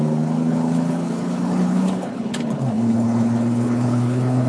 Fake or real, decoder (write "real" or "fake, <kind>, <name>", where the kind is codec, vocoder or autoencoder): fake, codec, HILCodec